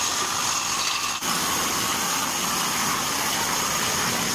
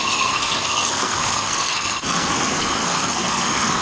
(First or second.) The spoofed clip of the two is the second